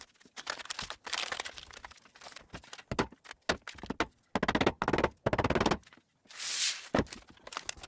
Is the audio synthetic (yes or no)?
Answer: no